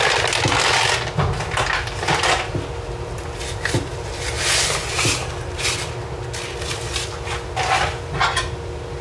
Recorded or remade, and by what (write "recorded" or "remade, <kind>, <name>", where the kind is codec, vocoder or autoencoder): recorded